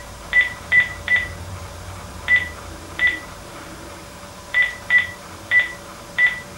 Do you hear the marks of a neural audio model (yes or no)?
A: yes